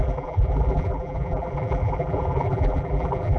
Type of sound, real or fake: fake